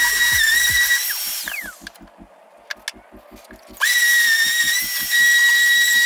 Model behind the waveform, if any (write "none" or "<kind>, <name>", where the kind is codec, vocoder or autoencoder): none